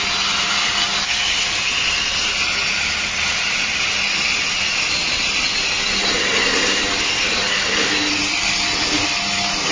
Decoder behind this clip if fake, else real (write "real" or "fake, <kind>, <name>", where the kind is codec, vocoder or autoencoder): real